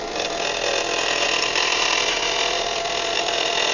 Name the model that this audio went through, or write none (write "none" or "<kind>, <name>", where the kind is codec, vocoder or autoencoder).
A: vocoder, BigVGAN v2